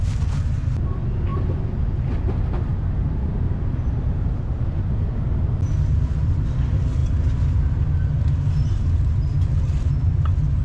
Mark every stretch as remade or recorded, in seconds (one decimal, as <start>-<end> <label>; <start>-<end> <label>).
0.0-10.6 recorded